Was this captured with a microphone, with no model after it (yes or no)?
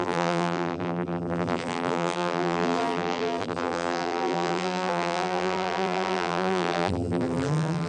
no